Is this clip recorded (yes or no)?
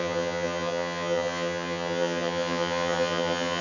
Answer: no